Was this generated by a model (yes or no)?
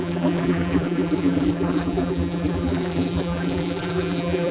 yes